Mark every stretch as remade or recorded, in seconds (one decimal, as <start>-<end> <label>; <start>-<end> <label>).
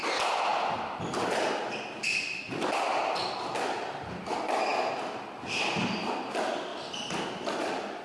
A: 0.0-8.0 recorded